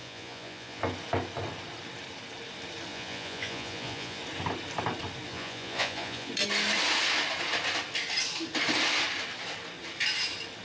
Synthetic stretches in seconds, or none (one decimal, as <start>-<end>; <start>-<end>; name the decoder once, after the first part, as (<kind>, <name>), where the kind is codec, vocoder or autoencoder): 0.0-0.8 (vocoder, Vocos); 2.9-4.2; 5.3-6.3